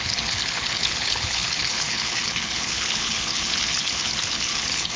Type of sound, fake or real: fake